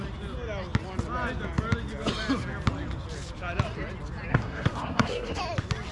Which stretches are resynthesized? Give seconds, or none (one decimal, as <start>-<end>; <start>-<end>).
4.3-5.4